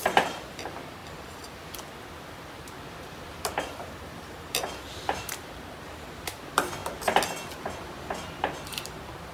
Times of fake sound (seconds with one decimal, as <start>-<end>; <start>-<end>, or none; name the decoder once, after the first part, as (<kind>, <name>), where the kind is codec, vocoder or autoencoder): 0.0-6.8 (vocoder, BigVGAN v2); 7.8-9.3